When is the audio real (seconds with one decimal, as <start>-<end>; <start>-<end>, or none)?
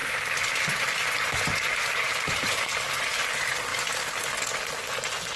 3.2-5.4